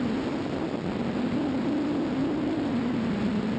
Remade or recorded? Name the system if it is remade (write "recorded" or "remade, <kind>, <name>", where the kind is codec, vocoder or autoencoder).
recorded